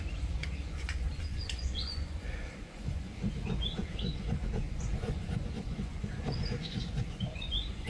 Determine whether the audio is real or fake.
fake